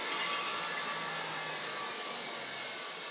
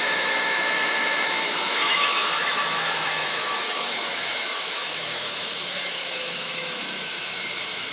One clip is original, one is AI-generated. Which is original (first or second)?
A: first